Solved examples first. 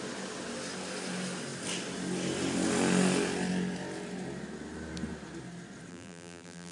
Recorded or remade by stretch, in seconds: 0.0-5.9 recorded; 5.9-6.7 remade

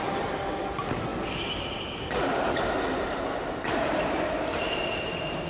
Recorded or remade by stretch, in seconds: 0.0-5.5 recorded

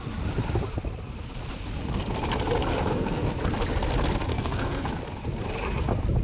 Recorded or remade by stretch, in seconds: 0.0-2.7 recorded; 2.7-3.3 remade; 3.3-4.3 recorded; 4.3-4.9 remade; 4.9-6.2 recorded

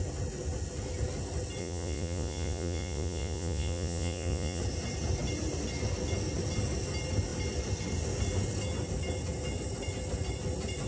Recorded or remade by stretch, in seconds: 0.0-1.6 recorded; 1.6-4.6 remade; 4.6-10.9 recorded

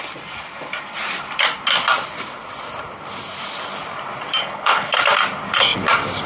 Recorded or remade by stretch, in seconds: 0.0-4.4 recorded; 4.4-4.9 remade; 4.9-6.3 recorded